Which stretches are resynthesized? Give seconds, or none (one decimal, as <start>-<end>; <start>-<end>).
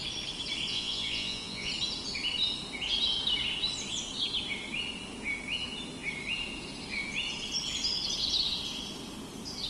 0.7-1.7